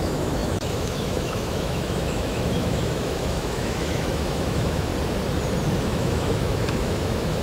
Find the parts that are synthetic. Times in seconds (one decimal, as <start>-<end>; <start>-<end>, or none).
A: 0.0-4.9; 5.8-7.4